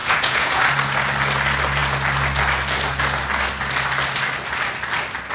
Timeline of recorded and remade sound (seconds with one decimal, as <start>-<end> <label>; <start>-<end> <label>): 0.0-0.6 remade; 0.6-5.3 recorded